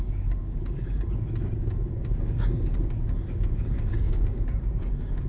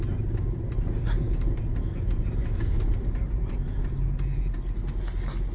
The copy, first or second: first